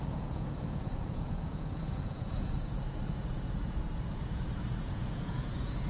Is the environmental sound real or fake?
fake